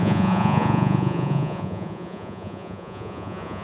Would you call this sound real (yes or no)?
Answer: no